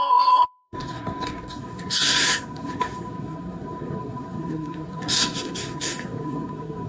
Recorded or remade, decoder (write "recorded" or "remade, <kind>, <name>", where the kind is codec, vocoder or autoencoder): remade, codec, SNAC